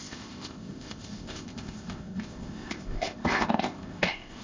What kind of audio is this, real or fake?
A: fake